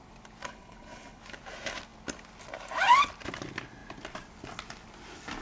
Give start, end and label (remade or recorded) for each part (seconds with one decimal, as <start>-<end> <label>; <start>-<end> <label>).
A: 0.0-0.4 recorded; 0.4-1.2 remade; 1.2-5.4 recorded

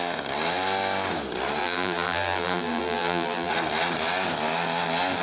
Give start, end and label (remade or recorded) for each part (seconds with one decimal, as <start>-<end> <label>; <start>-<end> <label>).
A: 0.0-1.6 recorded; 1.6-3.5 remade; 3.5-5.2 recorded

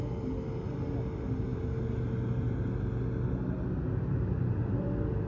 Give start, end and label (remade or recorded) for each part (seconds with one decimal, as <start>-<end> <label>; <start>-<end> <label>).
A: 0.0-5.3 recorded